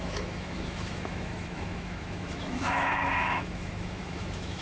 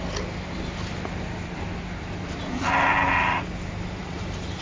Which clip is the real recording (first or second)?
second